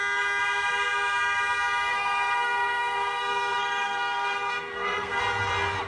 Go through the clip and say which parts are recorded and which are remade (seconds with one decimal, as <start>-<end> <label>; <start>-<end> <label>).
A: 0.0-1.9 recorded; 1.9-5.2 remade; 5.2-5.9 recorded